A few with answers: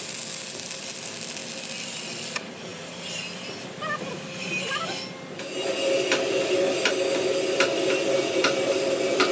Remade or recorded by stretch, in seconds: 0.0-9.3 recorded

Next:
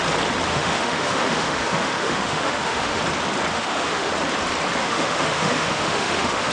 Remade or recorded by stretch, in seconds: 0.0-0.5 recorded; 0.5-3.0 remade; 3.0-3.5 recorded; 3.5-4.1 remade; 4.1-4.8 recorded; 4.8-6.5 remade

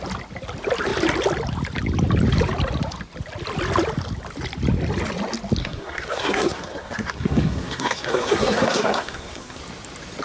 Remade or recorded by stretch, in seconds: 0.0-5.6 recorded; 5.6-9.6 remade; 9.6-10.2 recorded

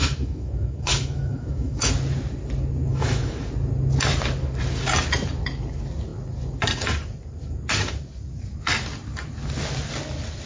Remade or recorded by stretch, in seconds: 0.0-1.9 remade; 1.9-2.9 recorded; 2.9-3.5 remade; 3.5-10.5 recorded

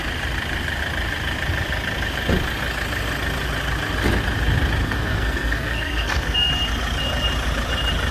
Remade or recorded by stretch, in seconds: 0.0-4.8 recorded; 4.8-6.5 remade; 6.5-8.1 recorded

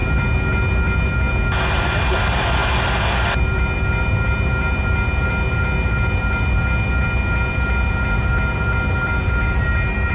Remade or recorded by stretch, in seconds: 0.0-10.1 recorded

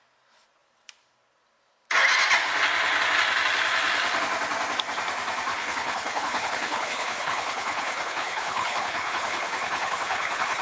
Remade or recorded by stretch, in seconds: 0.0-5.5 recorded; 5.5-10.6 remade